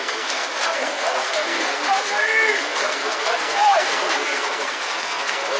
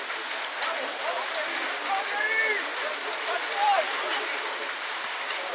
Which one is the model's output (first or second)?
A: first